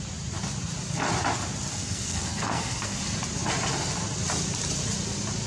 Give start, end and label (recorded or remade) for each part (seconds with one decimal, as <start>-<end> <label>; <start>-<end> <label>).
0.0-1.7 recorded; 1.7-3.0 remade; 3.0-5.5 recorded